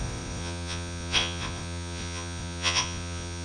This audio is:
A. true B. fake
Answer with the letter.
B